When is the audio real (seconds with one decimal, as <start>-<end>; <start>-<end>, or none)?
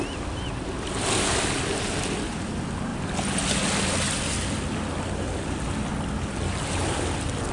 0.0-7.5